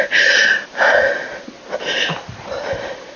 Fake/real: real